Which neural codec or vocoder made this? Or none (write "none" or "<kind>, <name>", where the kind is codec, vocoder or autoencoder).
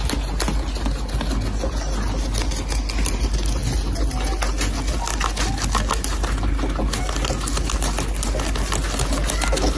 none